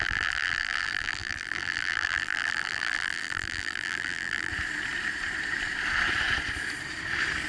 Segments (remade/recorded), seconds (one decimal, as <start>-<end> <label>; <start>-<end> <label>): 0.0-4.5 remade; 4.5-7.5 recorded